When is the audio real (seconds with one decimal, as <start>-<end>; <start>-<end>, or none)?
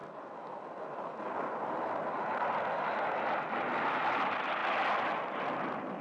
0.0-6.0